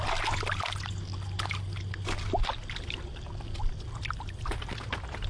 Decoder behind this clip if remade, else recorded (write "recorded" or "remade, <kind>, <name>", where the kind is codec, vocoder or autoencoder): recorded